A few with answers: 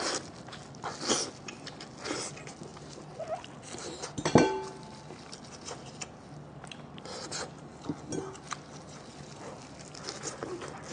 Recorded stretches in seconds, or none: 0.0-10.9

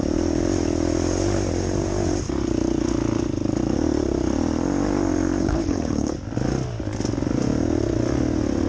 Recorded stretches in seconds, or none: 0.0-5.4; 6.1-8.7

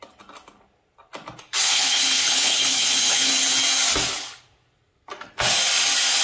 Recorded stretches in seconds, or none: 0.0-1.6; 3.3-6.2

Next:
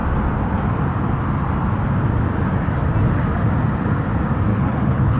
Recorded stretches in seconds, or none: 0.0-4.5

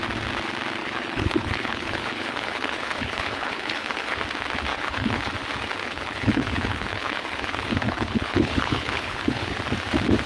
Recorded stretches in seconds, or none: 0.0-0.8; 4.2-4.7; 5.3-5.8; 9.6-10.3

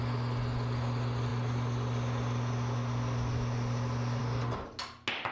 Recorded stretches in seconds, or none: 0.0-5.3

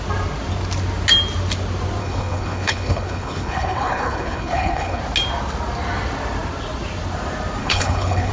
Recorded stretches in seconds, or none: 0.0-2.0; 5.0-7.6